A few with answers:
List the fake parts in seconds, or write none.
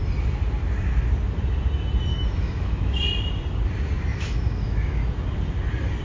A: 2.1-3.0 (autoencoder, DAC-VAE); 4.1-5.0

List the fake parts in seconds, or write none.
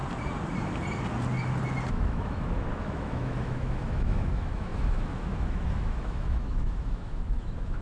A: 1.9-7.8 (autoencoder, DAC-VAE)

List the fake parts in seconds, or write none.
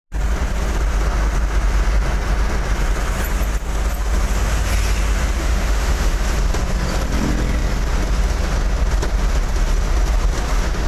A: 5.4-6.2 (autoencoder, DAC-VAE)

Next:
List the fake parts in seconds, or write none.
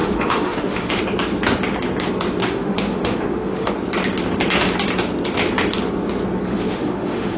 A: 0.0-1.0 (autoencoder, DAC-VAE); 2.4-3.7; 6.5-7.4